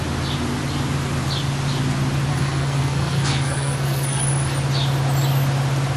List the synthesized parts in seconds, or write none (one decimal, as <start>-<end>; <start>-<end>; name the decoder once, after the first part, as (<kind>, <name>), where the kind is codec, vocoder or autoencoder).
2.3-4.2 (codec, SNAC)